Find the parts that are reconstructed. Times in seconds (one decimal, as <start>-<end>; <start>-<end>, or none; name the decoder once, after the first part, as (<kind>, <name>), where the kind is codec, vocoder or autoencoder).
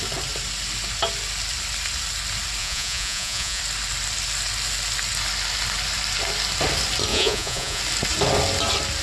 2.6-3.6 (vocoder, Vocos); 7.1-7.8